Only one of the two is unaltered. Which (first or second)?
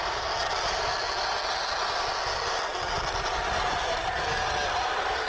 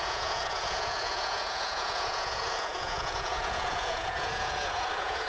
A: first